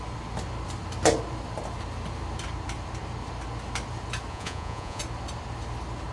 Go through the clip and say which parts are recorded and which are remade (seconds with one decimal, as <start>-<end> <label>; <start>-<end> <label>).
0.0-4.3 recorded; 4.3-5.0 remade; 5.0-6.1 recorded